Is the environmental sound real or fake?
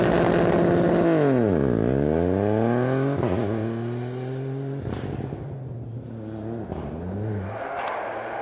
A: real